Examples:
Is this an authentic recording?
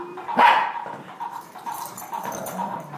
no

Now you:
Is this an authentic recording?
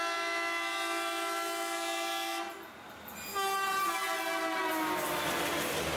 yes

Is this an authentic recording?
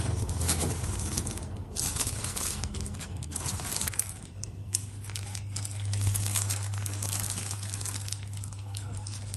no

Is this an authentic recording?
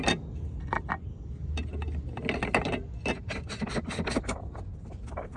yes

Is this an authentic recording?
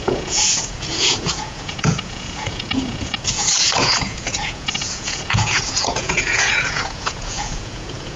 no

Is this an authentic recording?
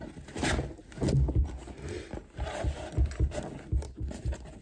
yes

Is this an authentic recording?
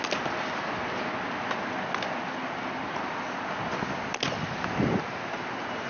yes